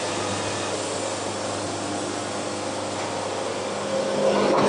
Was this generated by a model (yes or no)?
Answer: no